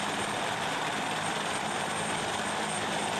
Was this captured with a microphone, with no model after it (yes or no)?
yes